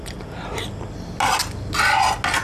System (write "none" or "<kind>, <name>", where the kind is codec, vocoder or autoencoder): none